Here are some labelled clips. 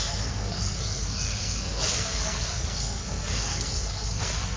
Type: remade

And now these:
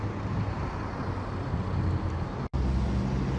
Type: recorded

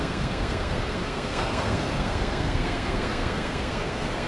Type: remade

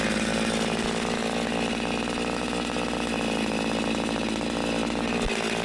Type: recorded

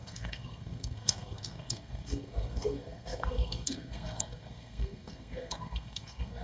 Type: remade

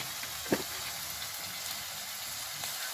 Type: recorded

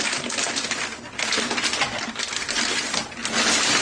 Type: recorded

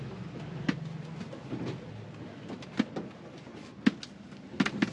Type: recorded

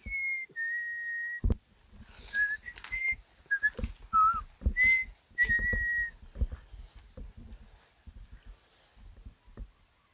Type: recorded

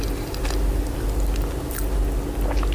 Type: recorded